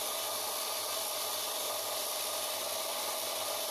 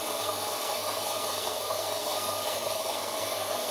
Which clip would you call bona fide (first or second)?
first